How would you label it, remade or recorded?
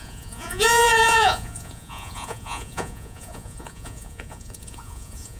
remade